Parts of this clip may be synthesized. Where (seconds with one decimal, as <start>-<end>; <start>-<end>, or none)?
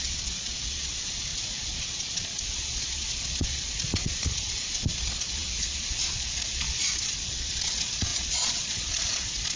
0.0-9.6